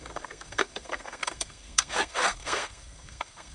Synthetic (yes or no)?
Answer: yes